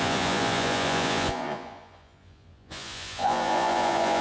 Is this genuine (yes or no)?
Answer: no